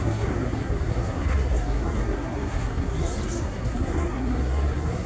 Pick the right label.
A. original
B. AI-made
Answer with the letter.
B